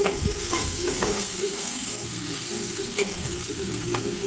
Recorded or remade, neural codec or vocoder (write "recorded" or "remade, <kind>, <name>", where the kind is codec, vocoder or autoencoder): remade, codec, SNAC